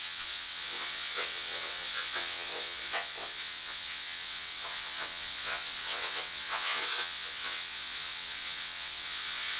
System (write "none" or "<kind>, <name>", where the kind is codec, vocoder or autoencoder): vocoder, WaveNeXt